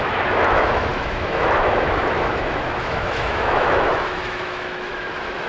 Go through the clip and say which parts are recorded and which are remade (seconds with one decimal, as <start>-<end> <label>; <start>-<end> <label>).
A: 0.0-5.5 remade